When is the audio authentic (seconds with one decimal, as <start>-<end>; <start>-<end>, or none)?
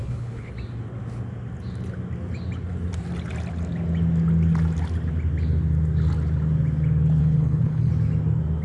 0.5-7.2; 7.9-8.6